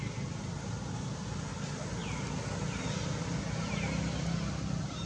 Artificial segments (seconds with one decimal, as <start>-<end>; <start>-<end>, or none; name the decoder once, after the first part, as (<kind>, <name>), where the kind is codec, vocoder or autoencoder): none